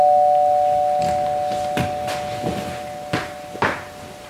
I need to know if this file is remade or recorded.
recorded